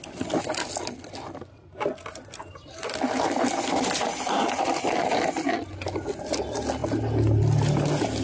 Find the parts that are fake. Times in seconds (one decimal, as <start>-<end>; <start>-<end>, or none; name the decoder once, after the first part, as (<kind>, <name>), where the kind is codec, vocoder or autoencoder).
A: none